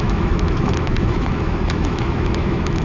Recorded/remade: remade